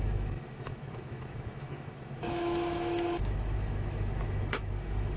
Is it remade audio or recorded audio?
remade